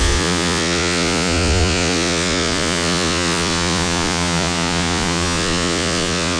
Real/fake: fake